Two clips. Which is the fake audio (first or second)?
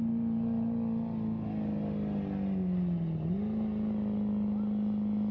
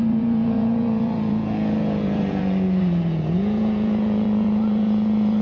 second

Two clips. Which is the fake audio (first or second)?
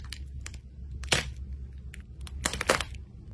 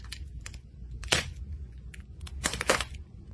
second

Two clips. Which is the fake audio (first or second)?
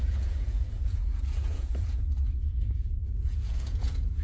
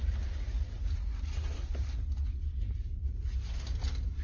first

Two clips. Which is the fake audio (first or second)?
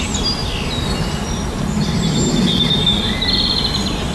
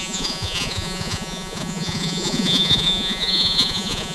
second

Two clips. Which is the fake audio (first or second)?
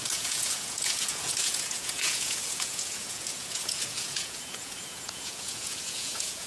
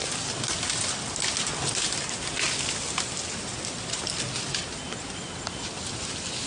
first